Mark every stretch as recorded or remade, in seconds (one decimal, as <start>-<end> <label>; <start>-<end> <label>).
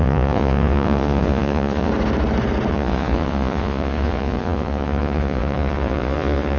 0.0-1.9 remade; 1.9-2.7 recorded; 2.7-6.6 remade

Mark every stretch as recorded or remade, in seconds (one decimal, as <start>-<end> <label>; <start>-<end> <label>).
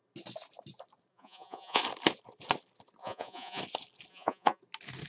0.0-1.1 recorded; 1.1-1.8 remade; 1.8-3.0 recorded; 3.0-3.6 remade; 3.6-4.1 recorded; 4.1-4.6 remade; 4.6-5.1 recorded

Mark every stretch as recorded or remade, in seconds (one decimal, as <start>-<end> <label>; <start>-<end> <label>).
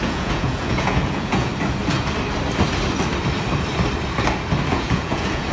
0.0-1.5 remade; 1.5-4.7 recorded; 4.7-5.5 remade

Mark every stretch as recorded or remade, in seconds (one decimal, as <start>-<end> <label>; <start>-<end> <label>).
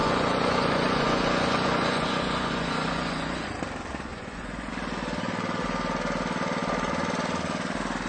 0.0-3.5 remade; 3.5-4.1 recorded; 4.1-4.7 remade; 4.7-8.1 recorded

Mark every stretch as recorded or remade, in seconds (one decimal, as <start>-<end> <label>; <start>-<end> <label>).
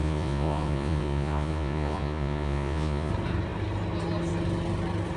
0.0-3.1 remade; 3.1-5.2 recorded